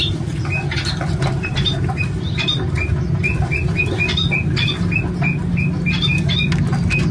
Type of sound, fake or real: real